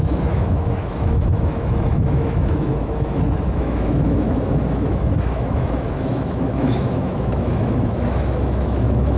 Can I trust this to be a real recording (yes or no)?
no